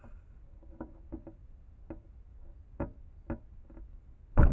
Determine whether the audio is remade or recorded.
recorded